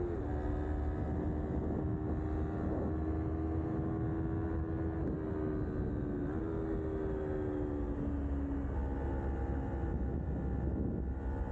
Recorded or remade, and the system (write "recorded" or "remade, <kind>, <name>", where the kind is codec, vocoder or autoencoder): recorded